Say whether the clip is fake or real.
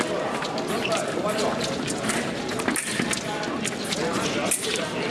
real